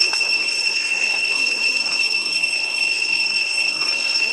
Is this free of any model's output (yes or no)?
no